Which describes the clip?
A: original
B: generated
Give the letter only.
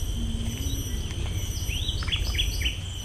A